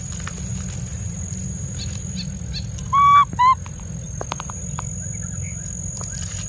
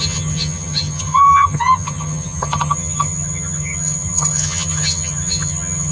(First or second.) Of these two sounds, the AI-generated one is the second